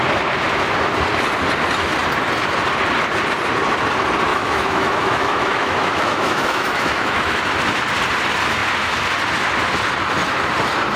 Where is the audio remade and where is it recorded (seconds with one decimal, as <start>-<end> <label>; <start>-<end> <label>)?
0.0-4.3 recorded; 4.3-7.4 remade; 7.4-11.0 recorded

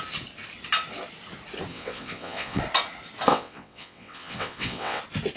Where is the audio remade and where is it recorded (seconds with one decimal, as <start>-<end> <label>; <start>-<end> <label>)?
0.0-1.7 recorded; 1.7-2.6 remade; 2.6-3.3 recorded; 3.3-5.0 remade; 5.0-5.4 recorded

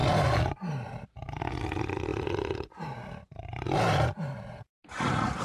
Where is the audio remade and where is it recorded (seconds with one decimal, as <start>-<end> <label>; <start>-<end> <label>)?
0.0-1.5 remade; 1.5-2.1 recorded; 2.1-5.4 remade

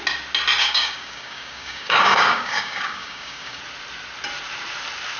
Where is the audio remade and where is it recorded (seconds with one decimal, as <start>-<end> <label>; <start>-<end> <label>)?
0.0-0.6 recorded; 0.6-3.6 remade; 3.6-5.2 recorded

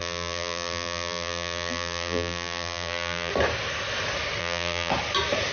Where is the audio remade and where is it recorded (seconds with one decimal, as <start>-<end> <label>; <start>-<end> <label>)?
0.0-3.3 remade; 3.3-4.4 recorded; 4.4-4.9 remade; 4.9-5.5 recorded

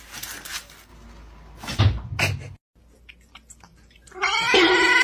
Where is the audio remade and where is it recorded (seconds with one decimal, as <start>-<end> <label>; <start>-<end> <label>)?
0.0-3.7 recorded; 3.7-4.3 remade; 4.3-5.0 recorded

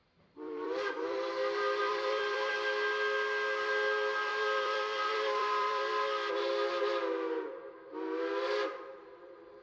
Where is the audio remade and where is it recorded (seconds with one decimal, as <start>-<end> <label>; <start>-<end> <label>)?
0.0-1.3 remade; 1.3-1.8 recorded; 1.8-2.5 remade; 2.5-4.3 recorded; 4.3-6.3 remade; 6.3-9.6 recorded